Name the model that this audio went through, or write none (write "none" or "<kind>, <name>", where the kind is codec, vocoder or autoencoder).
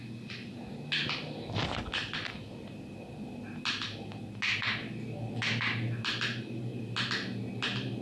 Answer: none